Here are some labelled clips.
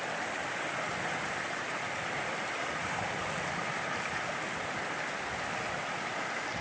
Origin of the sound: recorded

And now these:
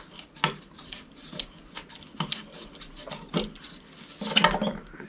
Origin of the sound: recorded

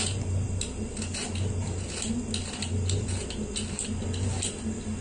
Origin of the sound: recorded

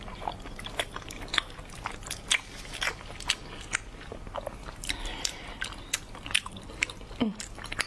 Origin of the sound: recorded